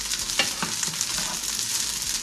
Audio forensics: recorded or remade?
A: recorded